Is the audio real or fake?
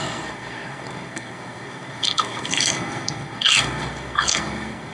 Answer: fake